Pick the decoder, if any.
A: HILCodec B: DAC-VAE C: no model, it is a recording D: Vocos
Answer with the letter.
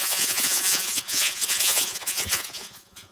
D